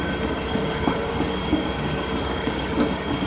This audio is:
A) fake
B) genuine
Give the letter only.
A